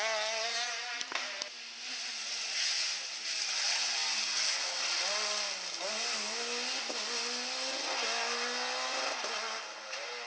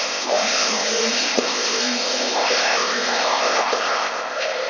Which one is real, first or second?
first